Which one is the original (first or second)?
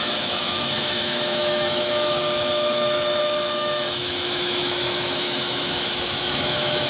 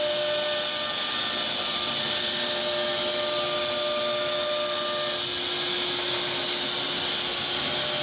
second